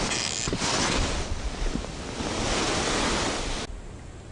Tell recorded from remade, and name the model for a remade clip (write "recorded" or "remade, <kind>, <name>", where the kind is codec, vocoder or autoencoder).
recorded